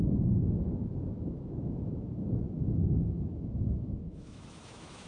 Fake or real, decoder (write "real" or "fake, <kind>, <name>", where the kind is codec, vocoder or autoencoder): fake, autoencoder, DAC-VAE